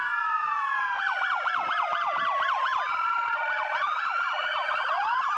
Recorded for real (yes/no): no